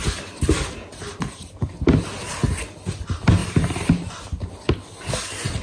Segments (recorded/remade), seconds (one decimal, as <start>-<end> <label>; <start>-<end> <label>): 0.0-3.4 recorded; 3.4-3.9 remade; 3.9-5.6 recorded